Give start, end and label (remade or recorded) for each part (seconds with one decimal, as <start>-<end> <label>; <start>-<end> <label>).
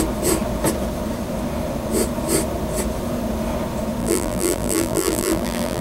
0.0-4.0 recorded; 4.0-5.8 remade